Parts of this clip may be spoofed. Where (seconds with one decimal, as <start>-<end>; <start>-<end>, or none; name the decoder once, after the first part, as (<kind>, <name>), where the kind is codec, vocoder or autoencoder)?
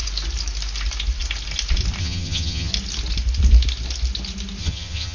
2.0-2.7 (vocoder, HiFi-GAN); 4.6-5.1